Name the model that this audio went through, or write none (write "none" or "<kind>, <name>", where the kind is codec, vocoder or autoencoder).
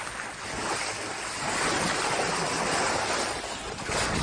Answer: none